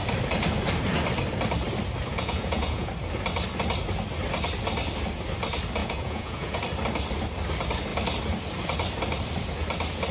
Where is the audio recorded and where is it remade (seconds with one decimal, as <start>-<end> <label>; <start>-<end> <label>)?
0.0-2.1 recorded; 2.1-2.9 remade; 2.9-5.8 recorded; 5.8-6.6 remade; 6.6-10.1 recorded